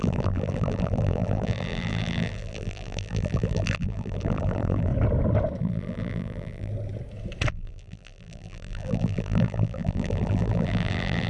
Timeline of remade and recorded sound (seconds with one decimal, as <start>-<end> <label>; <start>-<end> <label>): 0.0-4.9 remade; 4.9-5.6 recorded; 5.6-6.7 remade; 6.7-7.5 recorded; 7.5-11.3 remade